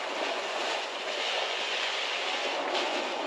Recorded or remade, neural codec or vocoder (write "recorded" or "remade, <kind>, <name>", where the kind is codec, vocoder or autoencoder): remade, vocoder, Vocos